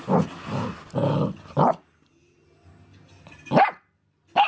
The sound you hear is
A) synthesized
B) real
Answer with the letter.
B